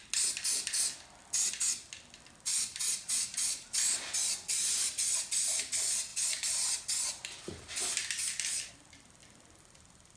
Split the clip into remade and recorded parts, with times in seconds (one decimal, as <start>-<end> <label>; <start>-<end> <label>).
0.0-2.5 recorded; 2.5-3.9 remade; 3.9-10.2 recorded

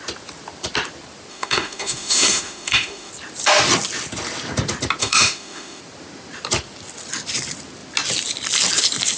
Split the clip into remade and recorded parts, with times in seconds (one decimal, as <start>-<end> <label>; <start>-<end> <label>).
0.0-1.3 recorded; 1.3-3.1 remade; 3.1-5.0 recorded; 5.0-5.8 remade; 5.8-9.2 recorded

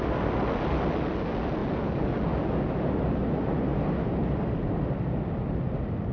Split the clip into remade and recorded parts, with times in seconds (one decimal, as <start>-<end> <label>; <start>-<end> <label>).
0.0-6.1 recorded